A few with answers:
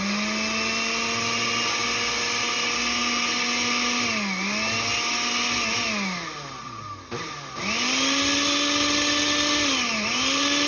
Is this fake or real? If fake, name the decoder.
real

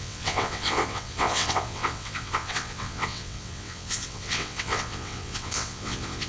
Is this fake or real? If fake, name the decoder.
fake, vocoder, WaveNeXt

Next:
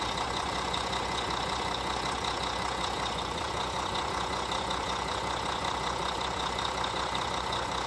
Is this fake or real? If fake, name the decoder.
fake, vocoder, Vocos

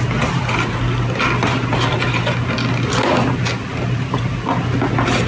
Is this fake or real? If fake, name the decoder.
real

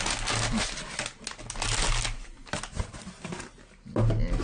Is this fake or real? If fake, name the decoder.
real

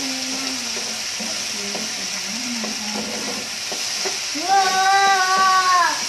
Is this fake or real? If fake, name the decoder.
real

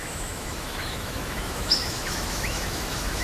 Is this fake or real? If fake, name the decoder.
fake, autoencoder, DAC-VAE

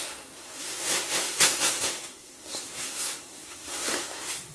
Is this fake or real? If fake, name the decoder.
fake, codec, SNAC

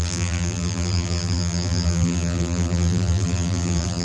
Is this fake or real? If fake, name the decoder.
fake, vocoder, BigVGAN v2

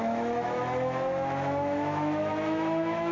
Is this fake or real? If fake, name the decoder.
fake, autoencoder, DAC-VAE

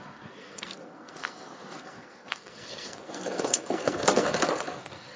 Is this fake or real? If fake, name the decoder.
fake, codec, SNAC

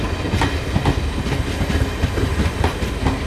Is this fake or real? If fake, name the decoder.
real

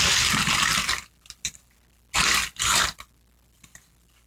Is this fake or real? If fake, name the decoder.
real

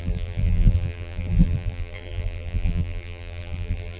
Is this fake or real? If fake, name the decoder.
fake, vocoder, BigVGAN v2